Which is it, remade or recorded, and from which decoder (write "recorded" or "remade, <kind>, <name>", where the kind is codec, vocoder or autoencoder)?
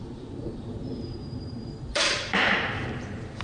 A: remade, vocoder, BigVGAN v2